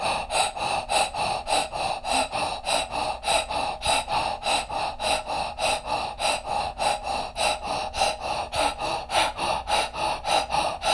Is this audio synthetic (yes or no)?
no